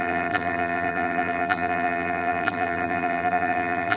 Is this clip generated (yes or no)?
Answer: yes